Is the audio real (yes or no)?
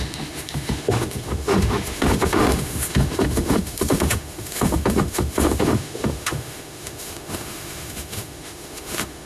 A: no